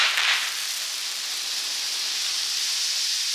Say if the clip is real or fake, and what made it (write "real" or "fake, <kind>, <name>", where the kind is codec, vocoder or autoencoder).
real